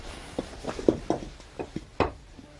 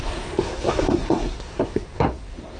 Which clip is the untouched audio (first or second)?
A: first